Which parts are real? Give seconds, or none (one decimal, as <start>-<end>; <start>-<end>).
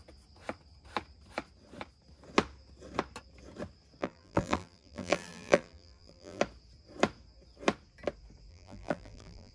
0.0-4.0; 6.4-8.5